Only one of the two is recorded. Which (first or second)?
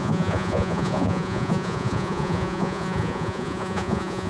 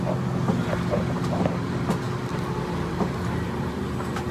second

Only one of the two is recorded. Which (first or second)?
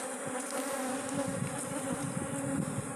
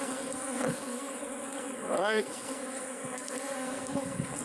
first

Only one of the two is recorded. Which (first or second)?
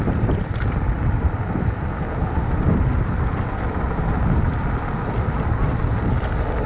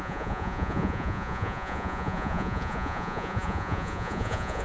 first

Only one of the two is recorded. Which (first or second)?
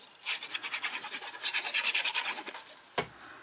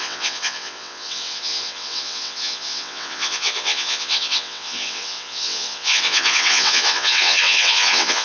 first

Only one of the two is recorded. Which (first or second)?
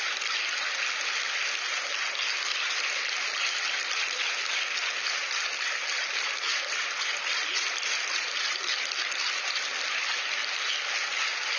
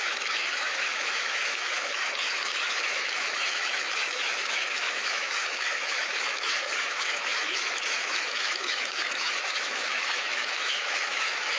first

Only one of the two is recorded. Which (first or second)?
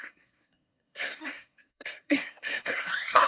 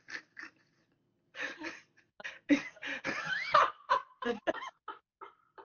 second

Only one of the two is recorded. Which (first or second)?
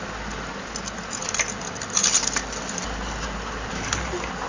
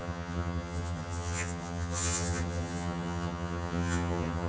first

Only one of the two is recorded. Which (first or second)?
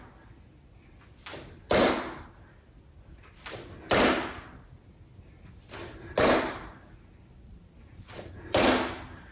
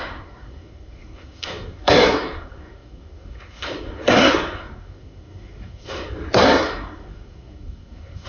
first